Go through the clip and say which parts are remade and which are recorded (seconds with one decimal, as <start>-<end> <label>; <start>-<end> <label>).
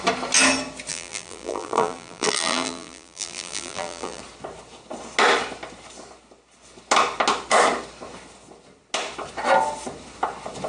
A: 0.0-0.9 recorded; 0.9-4.2 remade; 4.2-10.7 recorded